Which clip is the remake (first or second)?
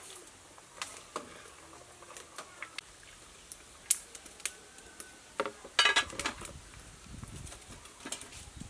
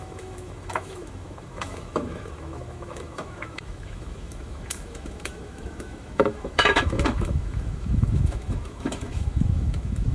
second